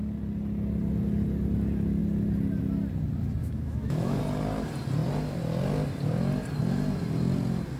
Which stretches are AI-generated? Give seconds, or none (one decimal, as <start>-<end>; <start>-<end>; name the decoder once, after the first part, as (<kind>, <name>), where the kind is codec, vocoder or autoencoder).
3.4-4.2 (autoencoder, DAC-VAE)